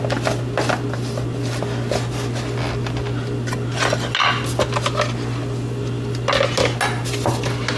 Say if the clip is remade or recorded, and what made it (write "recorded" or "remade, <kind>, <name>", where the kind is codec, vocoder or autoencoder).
recorded